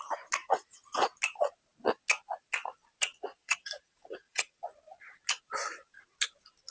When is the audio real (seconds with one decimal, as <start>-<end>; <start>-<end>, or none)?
0.0-0.4; 1.1-3.4; 4.6-6.7